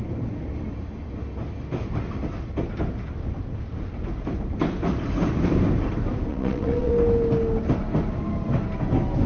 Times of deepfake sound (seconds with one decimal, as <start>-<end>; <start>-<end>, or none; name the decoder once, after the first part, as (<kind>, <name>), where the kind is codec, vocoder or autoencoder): 6.3-6.9 (vocoder, WaveNeXt)